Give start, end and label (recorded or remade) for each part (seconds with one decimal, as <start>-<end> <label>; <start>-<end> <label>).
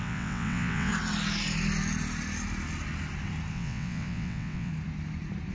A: 0.0-0.9 remade; 0.9-3.5 recorded; 3.5-4.7 remade; 4.7-5.5 recorded